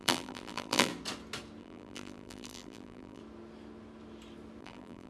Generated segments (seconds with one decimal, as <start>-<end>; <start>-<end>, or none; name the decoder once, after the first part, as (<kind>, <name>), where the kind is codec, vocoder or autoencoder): 0.0-0.9 (vocoder, BigVGAN v2); 1.6-3.2; 4.6-5.1